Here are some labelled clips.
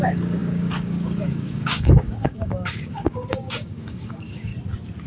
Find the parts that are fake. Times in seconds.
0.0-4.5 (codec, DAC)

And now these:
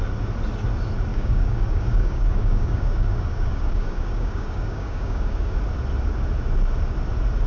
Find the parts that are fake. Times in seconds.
1.1-5.6 (codec, DAC)

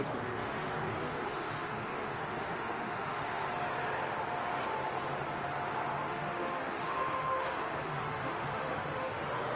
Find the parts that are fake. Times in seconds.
0.0-3.4 (autoencoder, DAC-VAE); 6.1-9.6

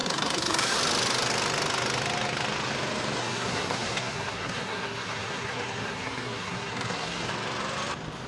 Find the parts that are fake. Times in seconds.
0.0-0.8 (codec, SNAC); 3.2-7.3

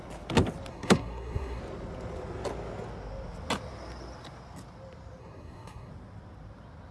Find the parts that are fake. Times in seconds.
0.7-1.6 (codec, SNAC); 5.2-5.9

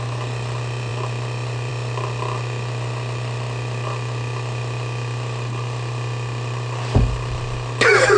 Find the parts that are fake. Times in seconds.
none

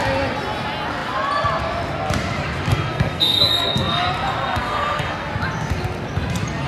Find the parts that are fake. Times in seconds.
2.7-4.0 (codec, SNAC); 4.4-5.3

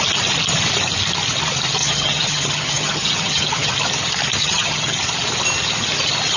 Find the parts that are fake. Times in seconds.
1.8-3.7 (vocoder, HiFi-GAN); 4.4-5.0